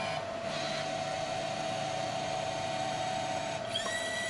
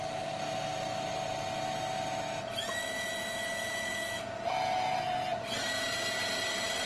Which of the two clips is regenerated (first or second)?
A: first